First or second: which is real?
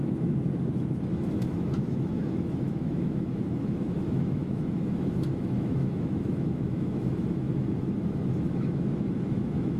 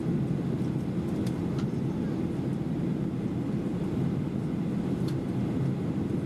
second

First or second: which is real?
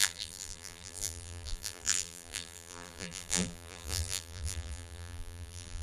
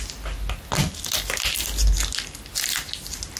second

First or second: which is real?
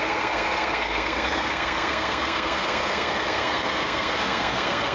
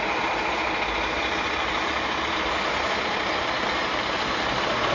second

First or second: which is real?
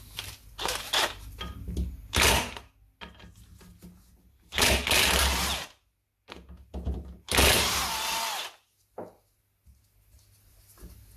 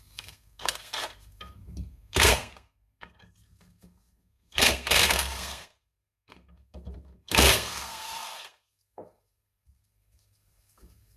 first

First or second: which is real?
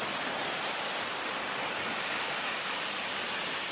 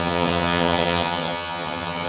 first